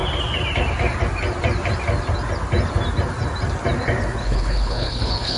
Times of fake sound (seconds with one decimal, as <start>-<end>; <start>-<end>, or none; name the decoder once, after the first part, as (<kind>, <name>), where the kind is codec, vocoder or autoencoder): 4.2-5.4 (codec, HILCodec)